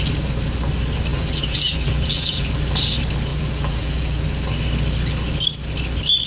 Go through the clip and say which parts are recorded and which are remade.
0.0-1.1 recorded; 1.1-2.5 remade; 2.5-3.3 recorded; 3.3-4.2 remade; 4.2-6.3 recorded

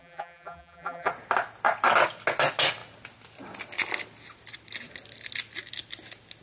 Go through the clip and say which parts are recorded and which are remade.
0.0-1.1 remade; 1.1-6.4 recorded